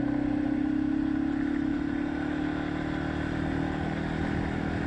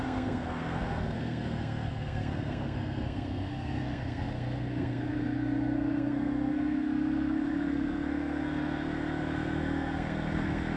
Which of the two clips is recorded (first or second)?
first